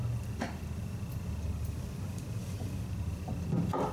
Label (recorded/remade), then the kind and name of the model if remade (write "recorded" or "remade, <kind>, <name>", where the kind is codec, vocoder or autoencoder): recorded